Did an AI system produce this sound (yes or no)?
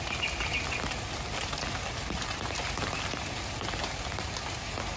no